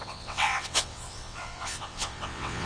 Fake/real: fake